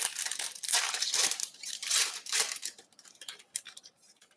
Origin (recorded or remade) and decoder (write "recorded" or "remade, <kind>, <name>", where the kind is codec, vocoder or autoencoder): remade, vocoder, BigVGAN v2